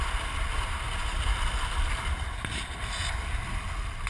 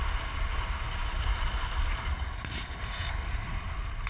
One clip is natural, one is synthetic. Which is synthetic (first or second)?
first